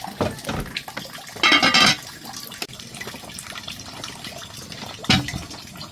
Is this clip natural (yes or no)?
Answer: yes